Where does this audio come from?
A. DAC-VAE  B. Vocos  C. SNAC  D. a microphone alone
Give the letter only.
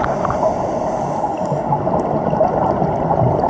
D